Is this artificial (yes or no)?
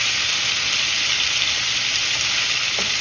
no